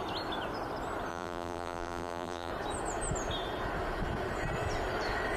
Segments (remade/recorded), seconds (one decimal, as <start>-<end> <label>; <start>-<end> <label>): 0.0-1.1 recorded; 1.1-2.5 remade; 2.5-5.4 recorded